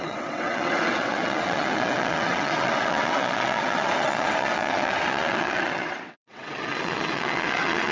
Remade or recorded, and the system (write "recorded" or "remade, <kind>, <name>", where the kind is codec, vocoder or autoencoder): remade, vocoder, WaveNeXt